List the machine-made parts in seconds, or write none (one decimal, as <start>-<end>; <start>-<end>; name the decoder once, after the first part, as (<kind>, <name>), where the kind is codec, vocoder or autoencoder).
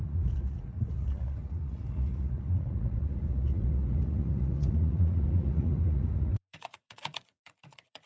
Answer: 0.0-8.1 (vocoder, Vocos)